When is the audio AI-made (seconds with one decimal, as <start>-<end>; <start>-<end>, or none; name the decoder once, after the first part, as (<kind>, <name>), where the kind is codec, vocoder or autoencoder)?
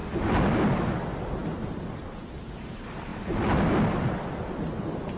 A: 0.0-0.9 (vocoder, BigVGAN v2); 1.4-2.0; 3.1-4.5